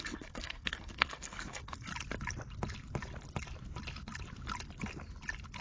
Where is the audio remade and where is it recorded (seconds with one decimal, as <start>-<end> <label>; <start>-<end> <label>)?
0.0-1.9 remade; 1.9-5.6 recorded